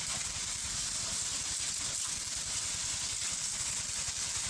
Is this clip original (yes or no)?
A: yes